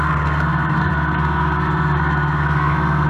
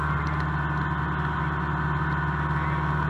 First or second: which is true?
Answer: second